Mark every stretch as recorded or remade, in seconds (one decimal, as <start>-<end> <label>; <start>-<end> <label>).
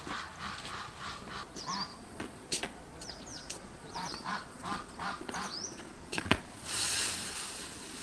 0.0-1.9 recorded; 1.9-2.8 remade; 2.8-3.3 recorded; 3.3-7.1 remade; 7.1-8.0 recorded